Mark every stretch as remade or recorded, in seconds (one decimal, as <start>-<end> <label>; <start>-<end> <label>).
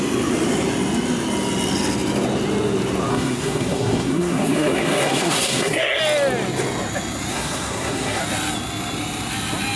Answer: 0.0-3.1 recorded; 3.1-6.0 remade; 6.0-7.3 recorded; 7.3-8.2 remade; 8.2-9.8 recorded